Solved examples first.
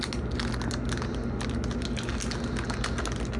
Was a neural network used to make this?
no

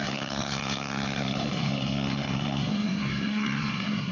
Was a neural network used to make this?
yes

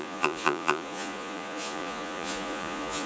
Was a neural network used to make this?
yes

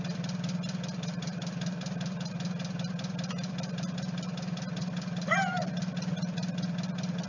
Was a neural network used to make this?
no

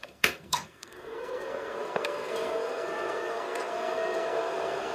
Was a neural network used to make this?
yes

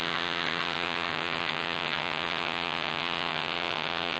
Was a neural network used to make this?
yes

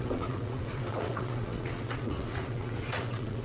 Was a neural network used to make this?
yes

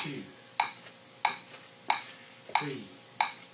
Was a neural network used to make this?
no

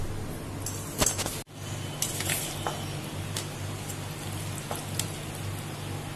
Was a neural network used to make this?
no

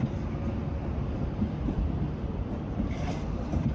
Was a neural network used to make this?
yes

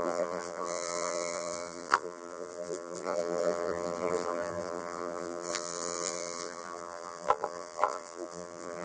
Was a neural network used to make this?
yes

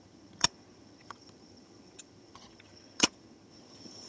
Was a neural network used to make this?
yes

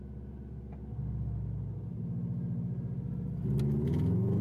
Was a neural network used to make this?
no